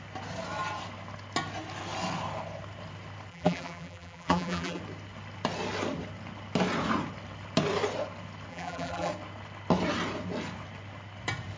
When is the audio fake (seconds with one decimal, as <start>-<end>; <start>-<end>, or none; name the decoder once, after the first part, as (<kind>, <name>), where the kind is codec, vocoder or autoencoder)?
3.3-4.8 (vocoder, BigVGAN v2); 8.5-9.1